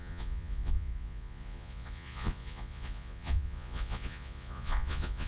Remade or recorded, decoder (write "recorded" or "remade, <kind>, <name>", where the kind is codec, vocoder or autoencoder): remade, vocoder, Vocos